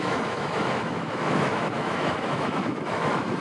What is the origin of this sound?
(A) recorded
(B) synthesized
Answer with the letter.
B